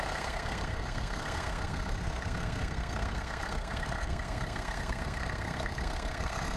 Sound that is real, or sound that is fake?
fake